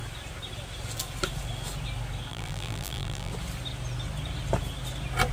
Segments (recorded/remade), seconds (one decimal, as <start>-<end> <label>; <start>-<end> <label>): 0.0-2.3 recorded; 2.3-3.3 remade; 3.3-5.3 recorded